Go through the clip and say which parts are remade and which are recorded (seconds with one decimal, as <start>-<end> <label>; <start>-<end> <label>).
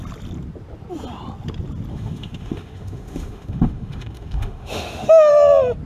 0.0-1.9 recorded; 1.9-5.3 remade; 5.3-5.9 recorded